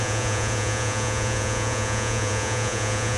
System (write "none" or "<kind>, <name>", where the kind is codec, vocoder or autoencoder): vocoder, Vocos